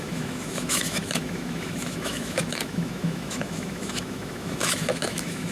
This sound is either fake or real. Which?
fake